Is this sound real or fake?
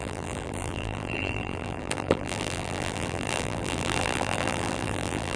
fake